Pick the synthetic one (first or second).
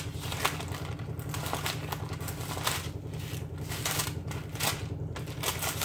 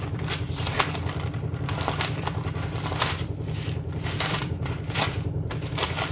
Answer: second